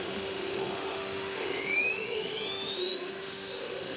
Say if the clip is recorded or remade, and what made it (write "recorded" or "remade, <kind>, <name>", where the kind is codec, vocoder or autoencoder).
remade, autoencoder, DAC-VAE